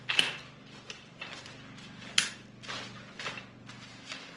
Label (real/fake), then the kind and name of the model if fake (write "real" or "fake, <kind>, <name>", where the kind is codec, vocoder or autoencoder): real